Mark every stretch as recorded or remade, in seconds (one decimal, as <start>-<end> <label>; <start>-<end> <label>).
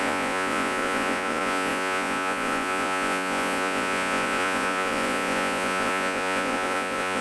0.0-7.2 remade